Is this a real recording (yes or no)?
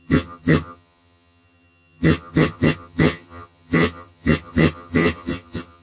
no